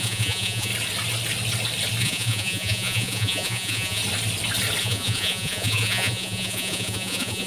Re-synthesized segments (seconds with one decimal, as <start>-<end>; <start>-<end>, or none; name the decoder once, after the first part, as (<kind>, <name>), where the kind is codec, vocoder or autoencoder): 0.0-0.7 (vocoder, Vocos); 2.0-4.0; 4.8-7.5